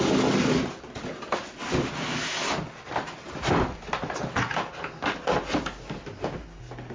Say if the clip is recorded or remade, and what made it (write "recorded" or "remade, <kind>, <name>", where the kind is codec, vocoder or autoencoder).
recorded